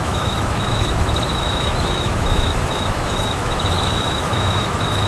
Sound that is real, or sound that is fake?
fake